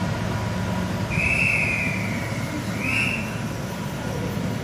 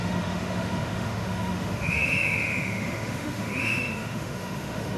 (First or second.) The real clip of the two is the first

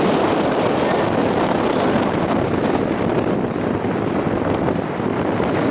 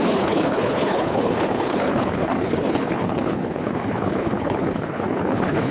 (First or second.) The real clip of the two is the first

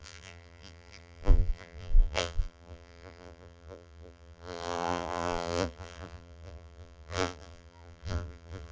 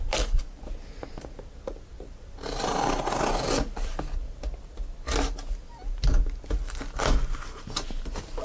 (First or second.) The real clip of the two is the second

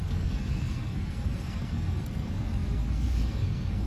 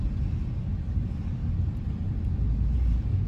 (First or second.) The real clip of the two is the second